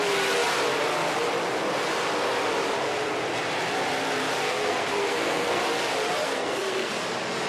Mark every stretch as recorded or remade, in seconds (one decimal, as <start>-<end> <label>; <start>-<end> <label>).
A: 0.0-4.4 recorded; 4.4-5.6 remade; 5.6-6.2 recorded; 6.2-6.9 remade; 6.9-7.5 recorded